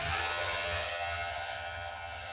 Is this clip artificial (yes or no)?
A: yes